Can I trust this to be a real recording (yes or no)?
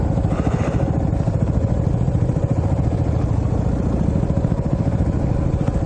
yes